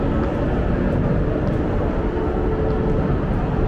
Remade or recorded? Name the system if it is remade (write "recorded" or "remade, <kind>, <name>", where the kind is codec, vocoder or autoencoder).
recorded